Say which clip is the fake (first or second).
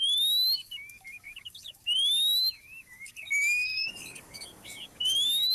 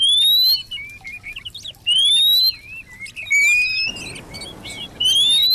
first